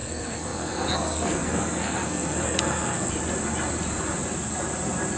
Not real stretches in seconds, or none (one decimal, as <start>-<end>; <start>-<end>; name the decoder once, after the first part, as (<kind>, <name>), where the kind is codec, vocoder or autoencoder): 0.0-3.1 (codec, SNAC)

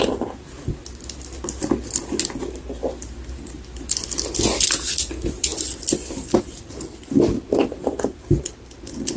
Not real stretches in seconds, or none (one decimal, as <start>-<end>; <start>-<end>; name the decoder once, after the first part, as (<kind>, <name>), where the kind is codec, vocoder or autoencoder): none

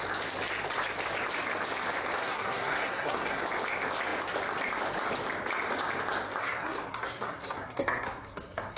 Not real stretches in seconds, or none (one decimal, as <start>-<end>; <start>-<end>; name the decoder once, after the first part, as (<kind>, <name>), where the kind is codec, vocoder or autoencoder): 2.2-3.4 (codec, SNAC); 6.4-8.8

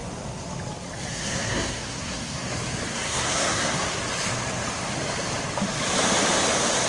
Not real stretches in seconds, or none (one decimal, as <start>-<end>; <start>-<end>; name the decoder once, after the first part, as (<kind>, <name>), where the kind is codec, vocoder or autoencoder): 1.1-2.5 (codec, SNAC); 2.9-4.0

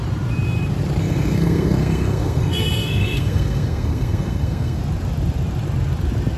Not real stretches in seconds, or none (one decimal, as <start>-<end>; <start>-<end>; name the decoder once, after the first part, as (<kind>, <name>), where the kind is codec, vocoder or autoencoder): 1.0-4.8 (codec, SNAC)

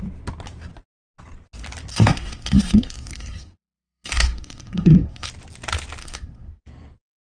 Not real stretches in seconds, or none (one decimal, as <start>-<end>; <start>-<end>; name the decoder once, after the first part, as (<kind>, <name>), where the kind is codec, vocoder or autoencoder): 1.9-5.3 (codec, SNAC); 6.0-6.6

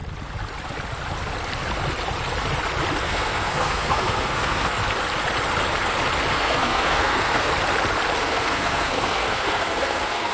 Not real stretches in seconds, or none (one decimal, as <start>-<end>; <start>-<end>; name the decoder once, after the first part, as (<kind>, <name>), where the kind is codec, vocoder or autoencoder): 3.0-4.8 (codec, SNAC); 6.3-7.5; 8.2-10.3